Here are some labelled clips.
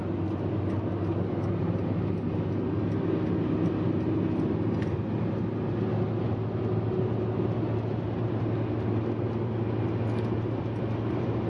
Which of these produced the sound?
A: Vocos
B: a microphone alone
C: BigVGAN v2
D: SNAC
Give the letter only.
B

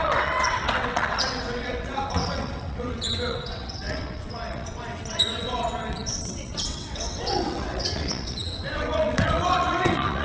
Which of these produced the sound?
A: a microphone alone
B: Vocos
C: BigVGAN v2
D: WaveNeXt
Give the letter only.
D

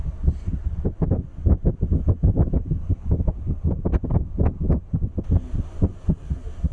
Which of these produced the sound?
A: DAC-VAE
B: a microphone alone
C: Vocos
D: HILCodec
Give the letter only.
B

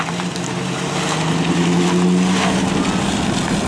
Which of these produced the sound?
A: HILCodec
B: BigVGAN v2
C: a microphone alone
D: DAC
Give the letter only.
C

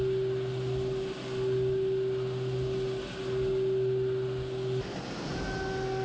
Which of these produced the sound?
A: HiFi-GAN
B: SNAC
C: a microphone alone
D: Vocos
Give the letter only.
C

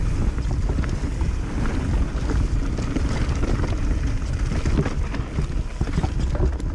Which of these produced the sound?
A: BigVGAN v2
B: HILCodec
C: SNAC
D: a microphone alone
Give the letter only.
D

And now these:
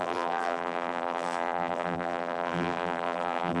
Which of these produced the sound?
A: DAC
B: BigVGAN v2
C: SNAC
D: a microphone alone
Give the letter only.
B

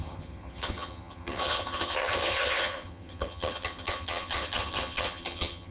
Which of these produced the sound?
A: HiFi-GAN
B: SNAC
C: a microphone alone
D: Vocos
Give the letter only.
A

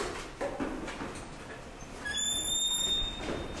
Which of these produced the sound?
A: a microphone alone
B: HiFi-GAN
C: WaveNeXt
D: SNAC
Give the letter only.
A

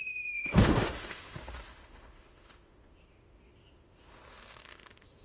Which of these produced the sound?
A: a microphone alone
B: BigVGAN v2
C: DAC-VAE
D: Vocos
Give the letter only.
C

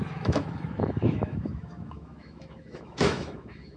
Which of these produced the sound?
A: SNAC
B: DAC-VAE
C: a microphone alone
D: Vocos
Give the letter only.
B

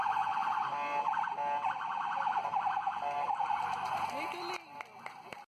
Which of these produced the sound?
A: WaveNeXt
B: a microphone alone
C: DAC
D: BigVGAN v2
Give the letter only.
B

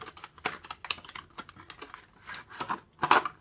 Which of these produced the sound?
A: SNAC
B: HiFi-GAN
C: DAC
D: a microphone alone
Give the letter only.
D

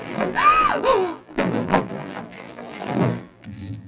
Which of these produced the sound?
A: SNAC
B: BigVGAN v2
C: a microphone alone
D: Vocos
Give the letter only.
B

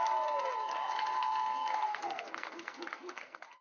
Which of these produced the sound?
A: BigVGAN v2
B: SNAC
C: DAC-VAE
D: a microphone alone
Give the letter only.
B